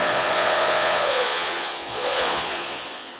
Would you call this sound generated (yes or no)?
yes